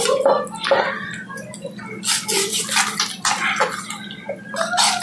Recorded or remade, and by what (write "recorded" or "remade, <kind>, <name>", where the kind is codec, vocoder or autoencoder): recorded